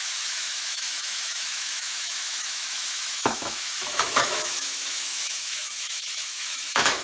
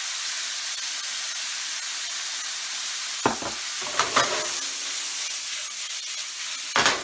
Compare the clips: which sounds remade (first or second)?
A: first